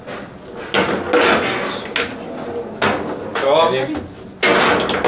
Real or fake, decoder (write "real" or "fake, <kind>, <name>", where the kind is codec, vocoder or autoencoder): real